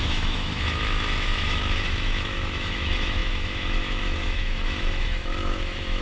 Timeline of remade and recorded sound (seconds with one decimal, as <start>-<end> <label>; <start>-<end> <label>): 0.0-6.0 remade

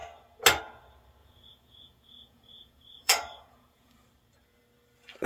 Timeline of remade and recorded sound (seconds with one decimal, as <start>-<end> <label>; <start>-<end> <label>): 0.0-1.2 recorded; 1.2-3.9 remade; 3.9-5.3 recorded

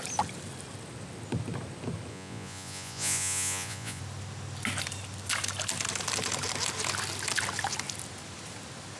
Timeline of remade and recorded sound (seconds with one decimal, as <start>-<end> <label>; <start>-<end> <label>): 0.0-2.1 recorded; 2.1-4.0 remade; 4.0-9.0 recorded

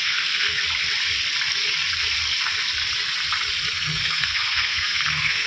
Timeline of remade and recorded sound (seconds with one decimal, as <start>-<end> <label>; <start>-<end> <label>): 0.0-0.6 remade; 0.6-3.7 recorded; 3.7-5.5 remade

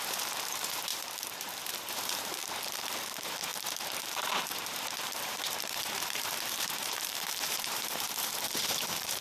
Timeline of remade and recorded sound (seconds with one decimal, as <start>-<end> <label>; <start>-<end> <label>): 0.0-2.4 remade; 2.4-3.0 recorded; 3.0-9.2 remade

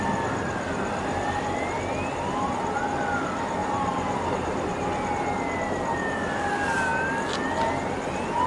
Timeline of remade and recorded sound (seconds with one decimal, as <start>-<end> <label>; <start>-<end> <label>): 0.0-3.6 recorded; 3.6-5.1 remade; 5.1-8.5 recorded

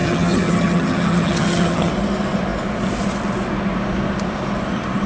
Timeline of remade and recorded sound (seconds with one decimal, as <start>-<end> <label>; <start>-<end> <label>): 0.0-1.9 remade; 1.9-5.1 recorded

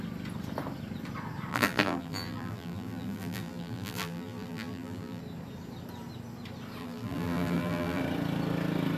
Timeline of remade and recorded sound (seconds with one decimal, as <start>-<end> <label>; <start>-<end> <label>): 0.0-1.5 recorded; 1.5-5.2 remade; 5.2-6.8 recorded; 6.8-8.0 remade; 8.0-9.0 recorded